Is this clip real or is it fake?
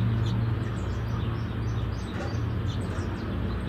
real